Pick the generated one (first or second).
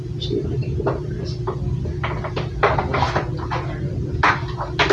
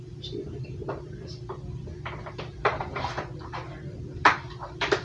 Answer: second